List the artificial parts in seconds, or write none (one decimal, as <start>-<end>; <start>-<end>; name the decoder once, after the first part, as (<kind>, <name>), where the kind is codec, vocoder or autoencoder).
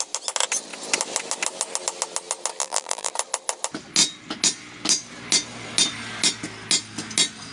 2.6-3.1 (vocoder, BigVGAN v2)